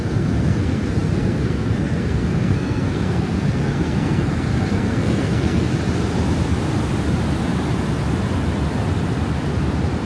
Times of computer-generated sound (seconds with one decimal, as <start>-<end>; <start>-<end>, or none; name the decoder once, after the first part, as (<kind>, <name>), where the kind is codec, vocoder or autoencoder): 0.0-5.7 (codec, SNAC)